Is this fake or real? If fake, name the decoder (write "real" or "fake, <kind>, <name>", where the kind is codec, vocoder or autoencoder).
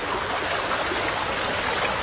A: real